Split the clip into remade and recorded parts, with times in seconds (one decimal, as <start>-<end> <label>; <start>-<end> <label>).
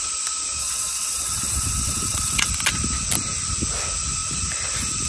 0.0-0.6 recorded; 0.6-2.5 remade; 2.5-5.1 recorded